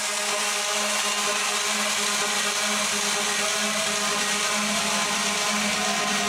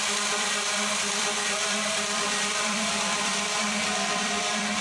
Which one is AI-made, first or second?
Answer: second